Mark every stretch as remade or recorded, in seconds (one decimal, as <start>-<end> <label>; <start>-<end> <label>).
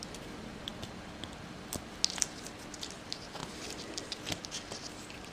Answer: 0.0-5.3 recorded